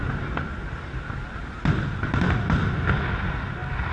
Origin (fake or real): real